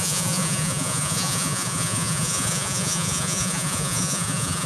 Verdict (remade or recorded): remade